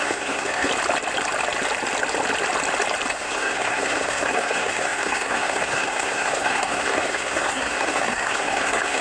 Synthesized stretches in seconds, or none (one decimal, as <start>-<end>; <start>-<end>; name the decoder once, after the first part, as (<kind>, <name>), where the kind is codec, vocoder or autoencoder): 0.0-0.7 (codec, SNAC); 3.1-9.0